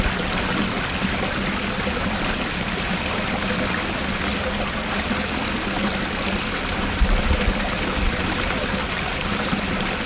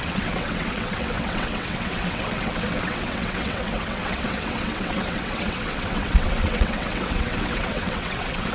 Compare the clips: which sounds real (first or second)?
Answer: first